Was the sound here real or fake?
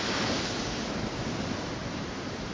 real